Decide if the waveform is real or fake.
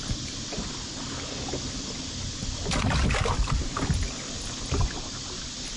real